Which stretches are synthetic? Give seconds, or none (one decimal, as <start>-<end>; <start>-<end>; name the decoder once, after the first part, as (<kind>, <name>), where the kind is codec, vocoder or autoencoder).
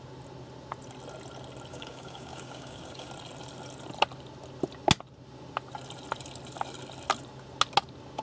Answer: 1.7-3.1 (codec, DAC)